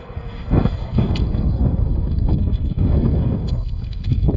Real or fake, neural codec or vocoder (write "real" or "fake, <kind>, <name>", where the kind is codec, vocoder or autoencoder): fake, codec, SNAC